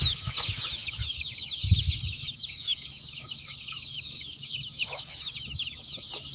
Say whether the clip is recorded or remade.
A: remade